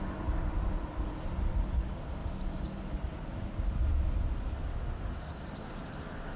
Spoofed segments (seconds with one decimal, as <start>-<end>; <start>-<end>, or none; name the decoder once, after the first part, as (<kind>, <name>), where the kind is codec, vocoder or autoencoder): 4.7-5.3 (autoencoder, DAC-VAE)